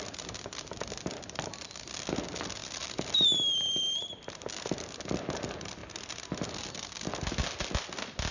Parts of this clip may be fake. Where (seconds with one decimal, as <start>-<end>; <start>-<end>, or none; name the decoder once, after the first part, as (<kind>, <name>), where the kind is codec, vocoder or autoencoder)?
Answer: 2.6-4.2 (vocoder, BigVGAN v2)